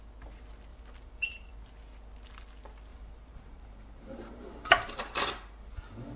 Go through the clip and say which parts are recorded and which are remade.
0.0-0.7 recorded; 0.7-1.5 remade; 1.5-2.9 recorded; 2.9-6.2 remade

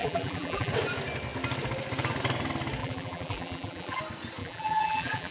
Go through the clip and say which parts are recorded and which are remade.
0.0-0.7 remade; 0.7-2.8 recorded; 2.8-4.0 remade; 4.0-4.4 recorded; 4.4-5.3 remade

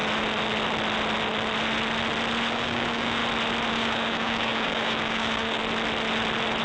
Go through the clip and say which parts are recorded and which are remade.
0.0-2.5 recorded; 2.5-3.2 remade; 3.2-3.7 recorded; 3.7-5.6 remade; 5.6-6.6 recorded

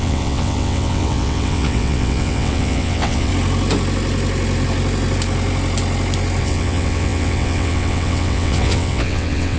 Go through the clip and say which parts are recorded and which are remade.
0.0-3.3 remade; 3.3-6.4 recorded; 6.4-9.6 remade

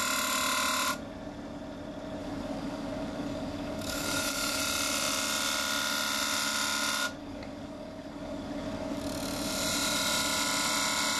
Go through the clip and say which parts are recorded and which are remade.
0.0-2.2 recorded; 2.2-4.6 remade; 4.6-7.2 recorded; 7.2-9.0 remade; 9.0-11.2 recorded